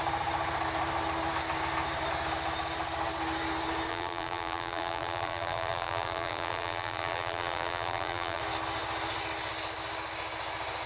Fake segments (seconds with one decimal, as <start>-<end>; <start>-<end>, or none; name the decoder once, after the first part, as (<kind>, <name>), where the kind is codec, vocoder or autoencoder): 3.9-8.4 (vocoder, BigVGAN v2)